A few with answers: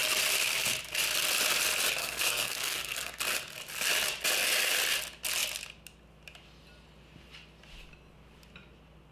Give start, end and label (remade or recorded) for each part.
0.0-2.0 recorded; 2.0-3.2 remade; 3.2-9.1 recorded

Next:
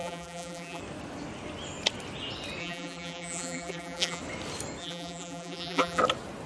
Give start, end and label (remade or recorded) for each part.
0.0-0.8 remade; 0.8-2.6 recorded; 2.6-4.2 remade; 4.2-4.8 recorded; 4.8-6.0 remade; 6.0-6.5 recorded